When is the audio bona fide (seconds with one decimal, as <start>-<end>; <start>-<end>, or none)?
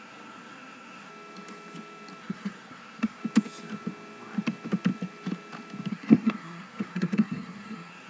1.1-2.2; 3.2-5.9